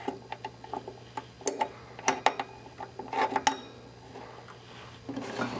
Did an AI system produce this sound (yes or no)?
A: no